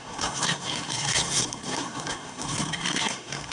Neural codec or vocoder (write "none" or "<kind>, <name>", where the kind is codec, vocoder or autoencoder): codec, SNAC